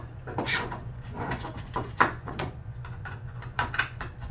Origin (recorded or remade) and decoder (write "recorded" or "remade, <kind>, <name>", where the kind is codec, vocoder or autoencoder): remade, vocoder, Vocos